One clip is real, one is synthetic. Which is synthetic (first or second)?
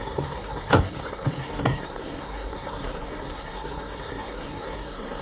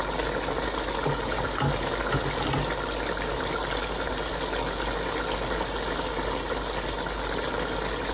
first